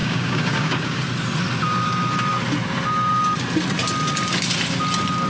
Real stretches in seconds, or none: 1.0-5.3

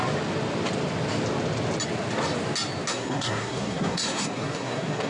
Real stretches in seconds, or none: 0.0-2.9